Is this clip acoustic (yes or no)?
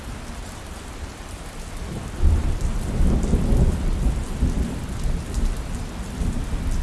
yes